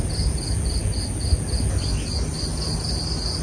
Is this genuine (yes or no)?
yes